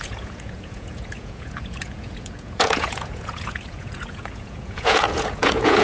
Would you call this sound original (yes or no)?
no